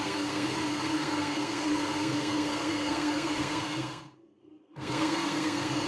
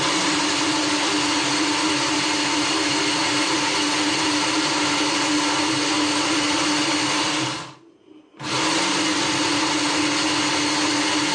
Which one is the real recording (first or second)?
second